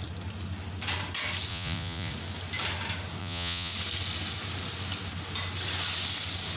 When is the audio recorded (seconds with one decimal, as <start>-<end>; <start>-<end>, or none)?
0.0-1.5; 2.1-3.2; 3.7-6.6